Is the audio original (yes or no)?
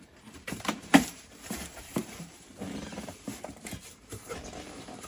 no